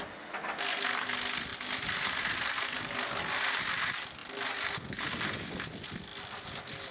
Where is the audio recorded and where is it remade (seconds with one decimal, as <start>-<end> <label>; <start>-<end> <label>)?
0.0-6.1 recorded; 6.1-6.9 remade